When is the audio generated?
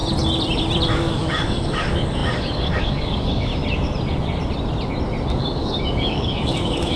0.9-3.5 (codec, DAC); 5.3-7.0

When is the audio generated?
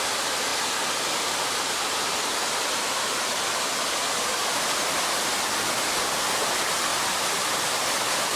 4.3-5.2 (vocoder, BigVGAN v2)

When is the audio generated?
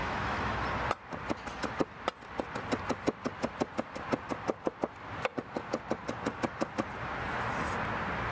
0.0-0.6 (autoencoder, DAC-VAE)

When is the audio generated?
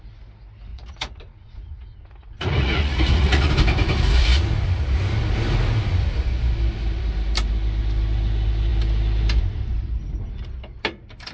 0.7-3.5 (vocoder, Vocos)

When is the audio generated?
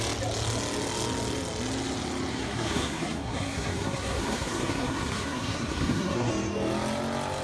2.3-6.3 (codec, SNAC)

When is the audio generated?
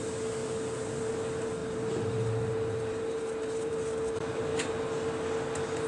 none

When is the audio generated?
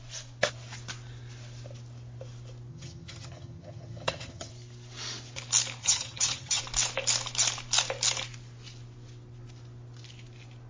2.7-4.5 (vocoder, HiFi-GAN); 5.8-6.6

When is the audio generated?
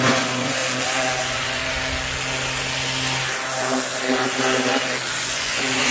0.0-0.6 (vocoder, Vocos); 1.2-1.6; 5.1-5.9